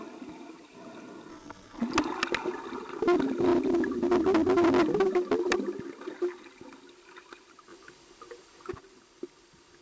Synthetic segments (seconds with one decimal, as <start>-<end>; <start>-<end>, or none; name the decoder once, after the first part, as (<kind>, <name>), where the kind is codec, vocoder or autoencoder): 1.3-1.8 (codec, SNAC)